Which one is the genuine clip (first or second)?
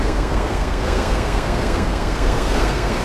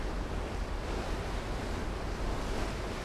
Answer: second